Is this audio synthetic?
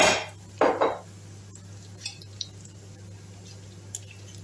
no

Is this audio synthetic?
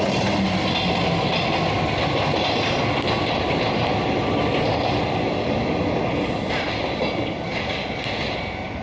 no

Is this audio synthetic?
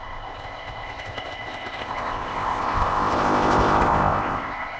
yes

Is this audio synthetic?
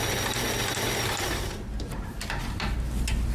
no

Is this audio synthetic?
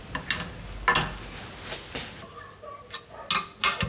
no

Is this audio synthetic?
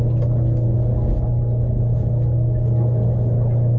no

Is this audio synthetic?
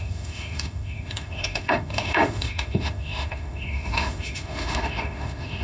yes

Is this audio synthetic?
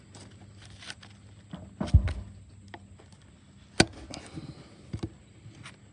no